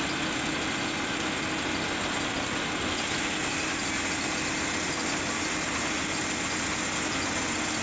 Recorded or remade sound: recorded